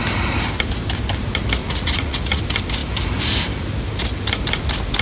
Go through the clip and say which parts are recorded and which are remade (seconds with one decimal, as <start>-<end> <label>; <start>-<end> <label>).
0.0-1.6 recorded; 1.6-2.4 remade; 2.4-5.0 recorded